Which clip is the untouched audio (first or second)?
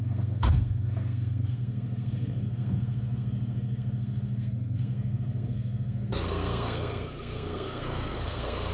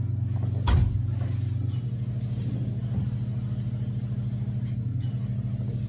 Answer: second